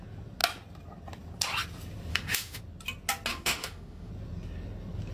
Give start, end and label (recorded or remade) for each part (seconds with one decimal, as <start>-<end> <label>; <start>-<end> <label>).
0.0-2.1 recorded; 2.1-2.6 remade; 2.6-3.3 recorded; 3.3-4.1 remade; 4.1-5.1 recorded